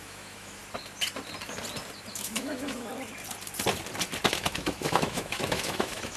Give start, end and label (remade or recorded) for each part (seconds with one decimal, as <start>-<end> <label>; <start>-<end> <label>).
0.0-0.6 remade; 0.6-2.1 recorded; 2.1-2.9 remade; 2.9-4.3 recorded; 4.3-6.2 remade